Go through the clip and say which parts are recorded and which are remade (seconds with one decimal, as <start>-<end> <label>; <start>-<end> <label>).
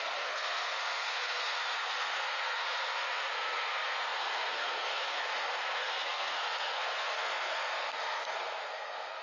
0.0-9.2 remade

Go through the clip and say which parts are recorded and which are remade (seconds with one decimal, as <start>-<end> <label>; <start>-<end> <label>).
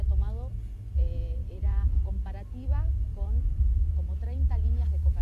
0.0-1.4 recorded; 1.4-2.1 remade; 2.1-3.1 recorded; 3.1-3.9 remade; 3.9-5.2 recorded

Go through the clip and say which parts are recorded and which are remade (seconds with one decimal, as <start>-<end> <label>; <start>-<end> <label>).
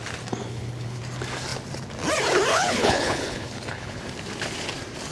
0.0-0.4 recorded; 0.4-1.0 remade; 1.0-2.5 recorded; 2.5-4.0 remade; 4.0-5.1 recorded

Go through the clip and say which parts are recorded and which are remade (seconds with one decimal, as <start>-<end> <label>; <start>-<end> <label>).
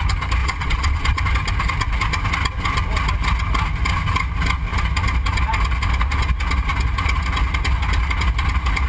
0.0-0.4 recorded; 0.4-1.2 remade; 1.2-8.9 recorded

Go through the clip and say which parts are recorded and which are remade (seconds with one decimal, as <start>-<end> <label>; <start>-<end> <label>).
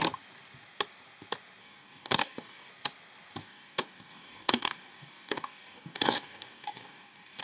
0.0-1.6 recorded; 1.6-2.7 remade; 2.7-3.4 recorded; 3.4-7.4 remade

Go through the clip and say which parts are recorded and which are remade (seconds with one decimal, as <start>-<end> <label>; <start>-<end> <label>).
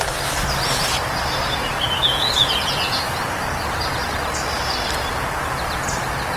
0.0-2.1 recorded; 2.1-3.2 remade; 3.2-6.4 recorded